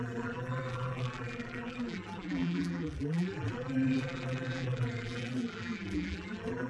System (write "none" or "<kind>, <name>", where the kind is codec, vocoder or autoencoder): vocoder, BigVGAN v2